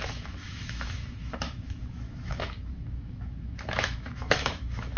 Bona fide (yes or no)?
no